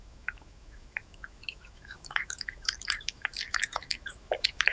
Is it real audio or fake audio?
fake